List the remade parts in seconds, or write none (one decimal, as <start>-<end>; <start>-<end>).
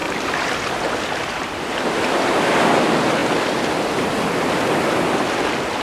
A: none